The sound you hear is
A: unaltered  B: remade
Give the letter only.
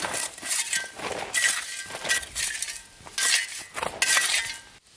A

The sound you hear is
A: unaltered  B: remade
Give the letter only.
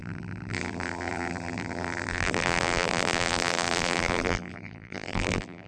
B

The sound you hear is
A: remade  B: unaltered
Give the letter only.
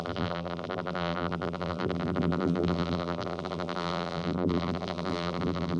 A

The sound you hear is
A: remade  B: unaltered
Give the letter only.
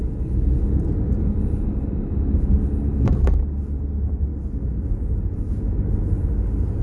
B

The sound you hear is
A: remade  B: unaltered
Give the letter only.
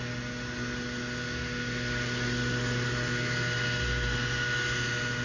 B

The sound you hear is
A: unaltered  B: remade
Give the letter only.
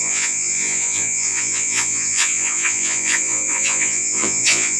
B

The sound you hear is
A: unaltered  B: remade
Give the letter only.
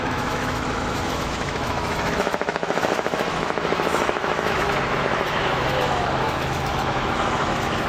B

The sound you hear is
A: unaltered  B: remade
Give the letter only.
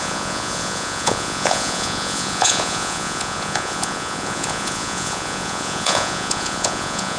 B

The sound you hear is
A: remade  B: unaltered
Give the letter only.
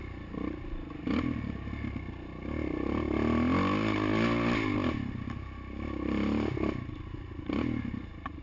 B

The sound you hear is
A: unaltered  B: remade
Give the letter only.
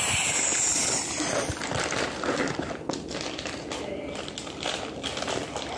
A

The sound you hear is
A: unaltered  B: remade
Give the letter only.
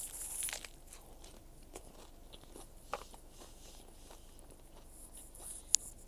A